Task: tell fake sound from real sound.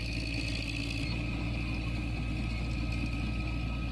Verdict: real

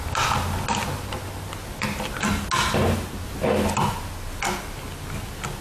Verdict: real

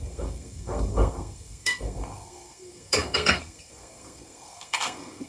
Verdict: fake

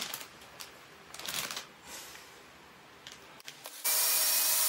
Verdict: fake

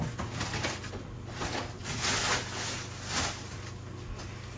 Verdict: real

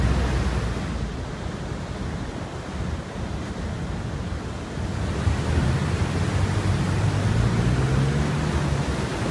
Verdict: real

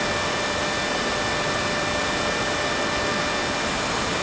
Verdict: real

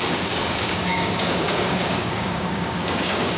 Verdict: fake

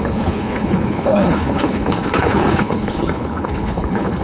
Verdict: fake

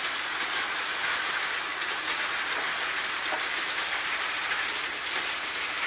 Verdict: real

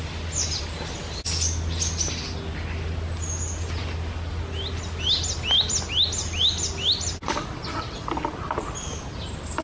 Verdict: real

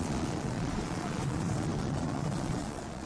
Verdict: fake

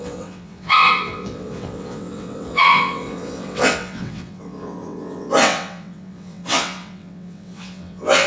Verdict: fake